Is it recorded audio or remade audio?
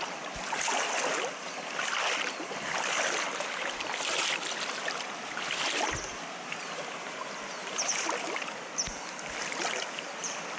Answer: recorded